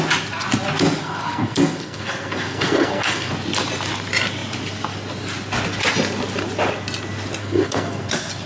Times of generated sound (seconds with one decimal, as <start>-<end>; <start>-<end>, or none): 1.0-3.3; 7.4-8.1

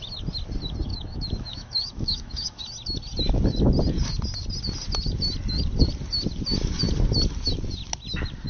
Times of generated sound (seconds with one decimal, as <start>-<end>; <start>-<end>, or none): 0.9-2.6